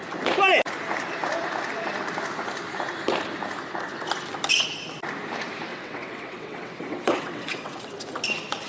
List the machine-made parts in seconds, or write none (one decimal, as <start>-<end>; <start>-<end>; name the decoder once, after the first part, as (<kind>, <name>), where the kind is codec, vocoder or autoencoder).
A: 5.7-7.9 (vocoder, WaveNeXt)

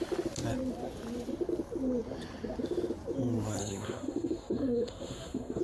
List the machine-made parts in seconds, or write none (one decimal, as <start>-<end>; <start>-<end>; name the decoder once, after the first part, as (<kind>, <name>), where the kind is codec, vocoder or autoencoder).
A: 3.6-5.6 (codec, SNAC)

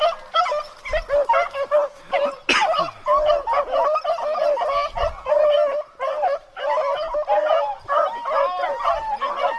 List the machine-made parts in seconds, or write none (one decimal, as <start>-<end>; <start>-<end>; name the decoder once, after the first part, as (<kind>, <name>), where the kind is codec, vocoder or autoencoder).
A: none

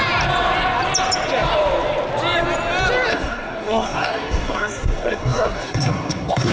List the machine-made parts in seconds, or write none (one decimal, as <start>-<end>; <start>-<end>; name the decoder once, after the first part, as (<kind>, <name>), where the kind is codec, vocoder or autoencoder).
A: 3.1-6.5 (codec, SNAC)

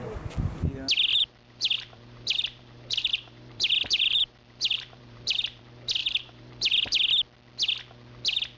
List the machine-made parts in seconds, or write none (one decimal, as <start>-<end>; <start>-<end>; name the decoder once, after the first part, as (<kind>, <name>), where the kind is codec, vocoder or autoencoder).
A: 1.1-5.6 (vocoder, BigVGAN v2); 6.0-7.0

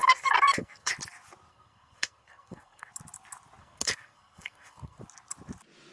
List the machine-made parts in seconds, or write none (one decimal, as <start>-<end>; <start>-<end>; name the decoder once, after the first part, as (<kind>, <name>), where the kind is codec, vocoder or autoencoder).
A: 0.0-0.9 (codec, SNAC); 1.5-2.9; 3.6-5.0

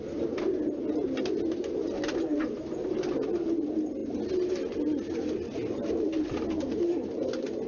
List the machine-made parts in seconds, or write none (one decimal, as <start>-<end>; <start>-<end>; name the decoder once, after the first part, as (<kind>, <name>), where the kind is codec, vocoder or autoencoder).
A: none